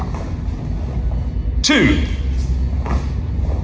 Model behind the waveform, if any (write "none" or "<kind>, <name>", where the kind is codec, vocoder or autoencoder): none